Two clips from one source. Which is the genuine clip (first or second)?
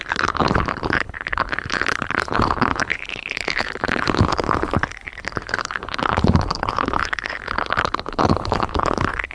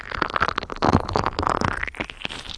second